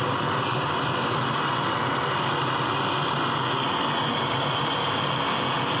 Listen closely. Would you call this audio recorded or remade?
recorded